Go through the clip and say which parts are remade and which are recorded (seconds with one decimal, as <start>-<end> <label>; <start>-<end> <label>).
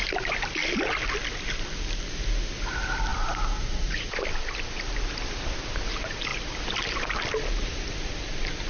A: 0.0-0.6 remade; 0.6-2.7 recorded; 2.7-8.7 remade